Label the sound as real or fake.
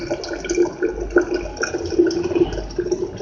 real